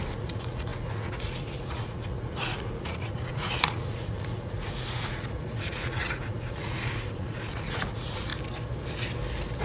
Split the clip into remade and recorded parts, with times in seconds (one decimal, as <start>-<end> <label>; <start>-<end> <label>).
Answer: 0.0-8.3 remade; 8.3-9.6 recorded